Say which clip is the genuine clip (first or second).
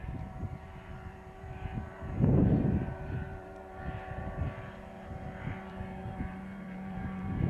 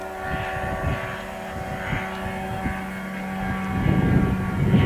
second